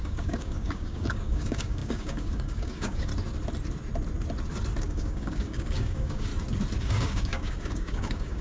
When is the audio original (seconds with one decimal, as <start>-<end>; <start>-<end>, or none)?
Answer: 3.1-4.8; 6.3-6.8